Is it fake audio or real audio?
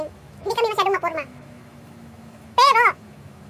fake